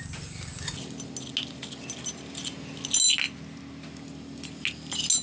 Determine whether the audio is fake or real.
real